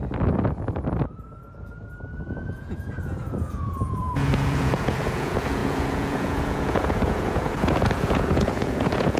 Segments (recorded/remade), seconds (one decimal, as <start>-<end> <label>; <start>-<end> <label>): 0.0-2.3 recorded; 2.3-9.2 remade